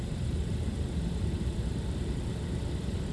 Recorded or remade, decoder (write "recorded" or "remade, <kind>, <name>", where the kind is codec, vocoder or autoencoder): remade, vocoder, BigVGAN v2